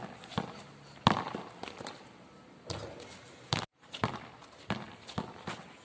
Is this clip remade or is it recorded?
recorded